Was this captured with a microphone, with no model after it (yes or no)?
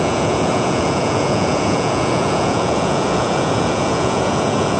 no